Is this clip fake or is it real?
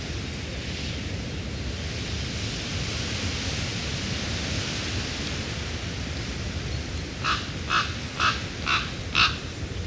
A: real